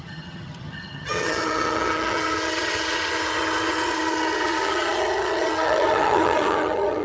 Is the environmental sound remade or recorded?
remade